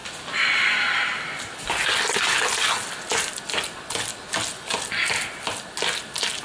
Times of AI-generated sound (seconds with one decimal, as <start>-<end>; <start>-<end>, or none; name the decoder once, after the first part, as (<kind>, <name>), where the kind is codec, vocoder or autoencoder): none